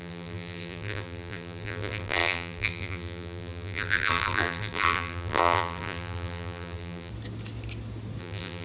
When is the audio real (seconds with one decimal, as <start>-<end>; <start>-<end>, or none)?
7.1-8.2